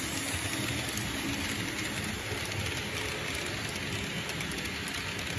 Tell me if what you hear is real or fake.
real